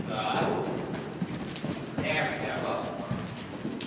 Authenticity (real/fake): real